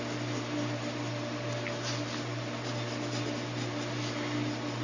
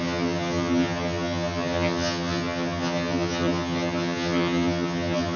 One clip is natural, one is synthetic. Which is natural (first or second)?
first